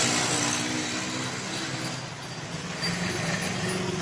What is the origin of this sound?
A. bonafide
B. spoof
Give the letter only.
A